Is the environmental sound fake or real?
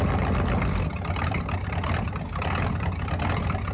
real